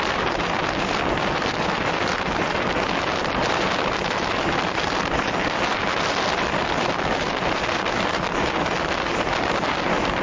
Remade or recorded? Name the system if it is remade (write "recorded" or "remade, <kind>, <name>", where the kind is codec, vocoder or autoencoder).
recorded